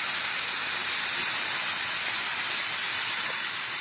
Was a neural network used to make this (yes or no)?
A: no